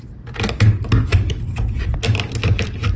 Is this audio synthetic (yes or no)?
no